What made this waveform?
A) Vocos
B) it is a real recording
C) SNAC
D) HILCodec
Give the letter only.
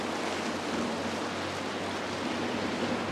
B